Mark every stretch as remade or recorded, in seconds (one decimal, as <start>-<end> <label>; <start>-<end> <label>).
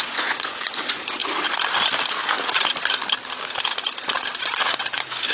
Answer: 0.0-1.2 remade; 1.2-4.4 recorded; 4.4-5.3 remade